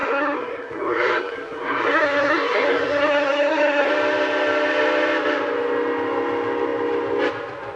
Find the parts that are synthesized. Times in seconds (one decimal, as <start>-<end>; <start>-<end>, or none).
0.0-3.9